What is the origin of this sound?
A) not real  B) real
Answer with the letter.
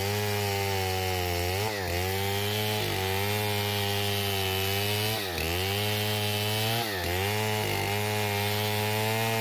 B